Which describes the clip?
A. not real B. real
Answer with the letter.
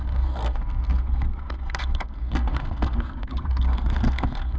A